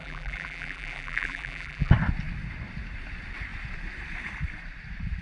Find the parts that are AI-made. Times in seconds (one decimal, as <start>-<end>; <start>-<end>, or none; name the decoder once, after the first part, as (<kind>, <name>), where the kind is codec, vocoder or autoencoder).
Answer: 0.0-1.9 (vocoder, BigVGAN v2)